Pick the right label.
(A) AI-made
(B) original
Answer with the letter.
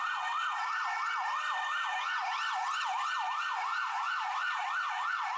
B